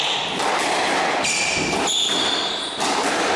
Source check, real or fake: real